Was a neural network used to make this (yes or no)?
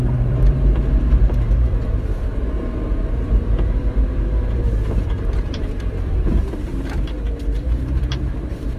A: yes